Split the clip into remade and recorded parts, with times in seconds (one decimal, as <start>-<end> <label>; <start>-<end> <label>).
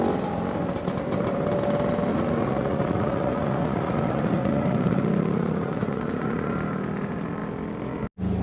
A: 0.0-2.1 recorded; 2.1-6.5 remade; 6.5-8.4 recorded